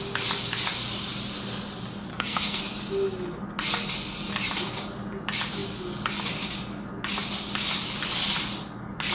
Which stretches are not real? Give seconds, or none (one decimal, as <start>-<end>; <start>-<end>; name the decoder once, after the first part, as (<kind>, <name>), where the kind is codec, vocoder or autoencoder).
2.1-2.6 (codec, SNAC)